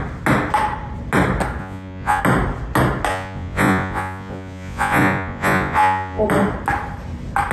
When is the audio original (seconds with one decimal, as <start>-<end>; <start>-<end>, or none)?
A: 0.0-1.6; 2.2-3.1; 6.2-7.5